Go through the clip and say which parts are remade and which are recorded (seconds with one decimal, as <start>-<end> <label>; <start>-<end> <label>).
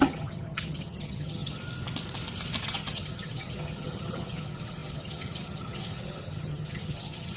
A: 0.0-1.6 remade; 1.6-2.6 recorded; 2.6-7.4 remade